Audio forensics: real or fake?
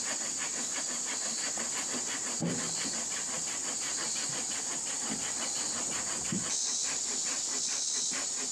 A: real